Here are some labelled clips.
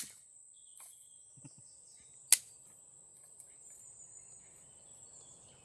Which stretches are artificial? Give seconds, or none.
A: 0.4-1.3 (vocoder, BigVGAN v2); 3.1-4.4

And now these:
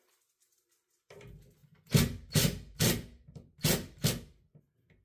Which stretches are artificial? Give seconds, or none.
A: none

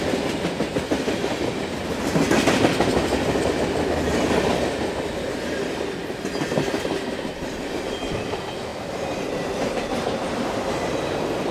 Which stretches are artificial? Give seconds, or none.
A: 8.7-10.4 (vocoder, BigVGAN v2)

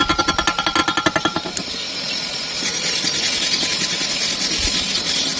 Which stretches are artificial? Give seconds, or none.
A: 0.8-2.6 (vocoder, BigVGAN v2)